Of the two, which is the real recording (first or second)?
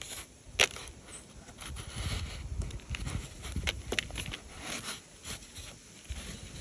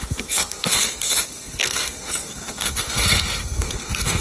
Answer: first